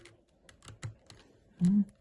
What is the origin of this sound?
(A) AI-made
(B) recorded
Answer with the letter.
B